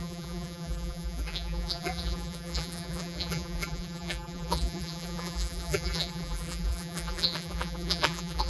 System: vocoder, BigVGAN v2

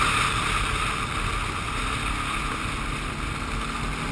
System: none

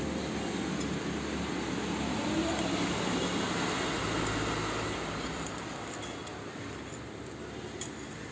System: none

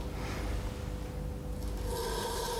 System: none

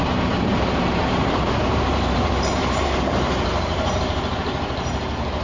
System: vocoder, BigVGAN v2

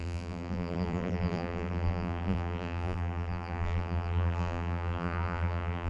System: vocoder, BigVGAN v2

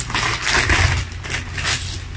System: none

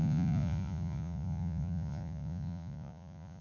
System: vocoder, Vocos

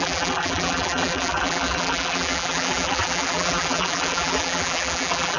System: vocoder, BigVGAN v2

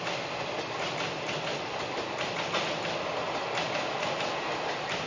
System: none